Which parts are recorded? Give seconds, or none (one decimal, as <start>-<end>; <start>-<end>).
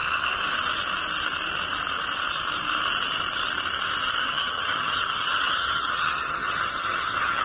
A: 0.0-4.2